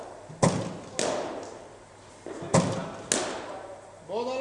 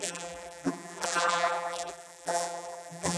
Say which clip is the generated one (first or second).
second